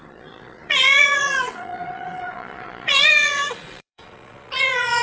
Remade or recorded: remade